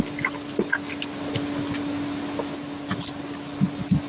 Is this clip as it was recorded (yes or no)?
yes